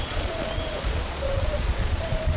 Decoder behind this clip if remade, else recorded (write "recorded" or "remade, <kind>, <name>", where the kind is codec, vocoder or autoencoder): remade, vocoder, Vocos